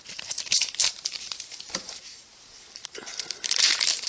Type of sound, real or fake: fake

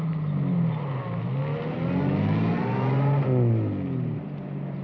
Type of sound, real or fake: real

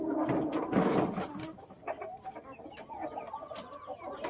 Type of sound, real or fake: real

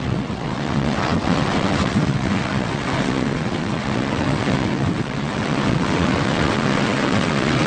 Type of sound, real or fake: fake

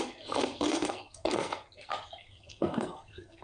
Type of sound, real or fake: fake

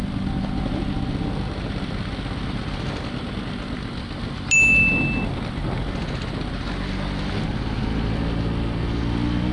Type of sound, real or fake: real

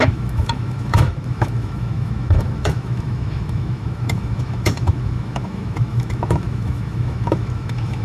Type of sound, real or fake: fake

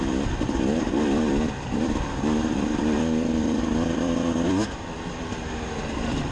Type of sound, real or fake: fake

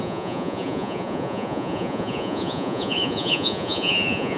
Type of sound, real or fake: fake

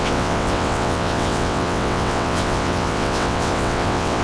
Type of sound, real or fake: fake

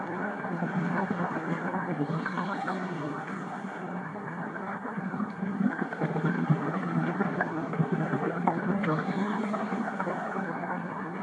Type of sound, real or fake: fake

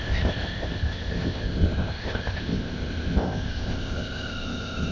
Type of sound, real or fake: fake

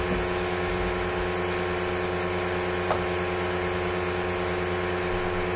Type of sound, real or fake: real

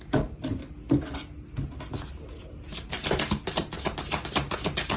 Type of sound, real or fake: real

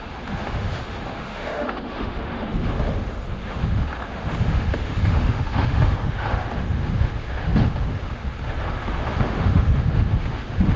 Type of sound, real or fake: fake